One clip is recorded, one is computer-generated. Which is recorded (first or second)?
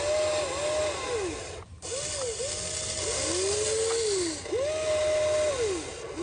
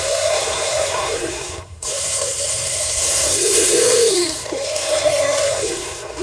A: first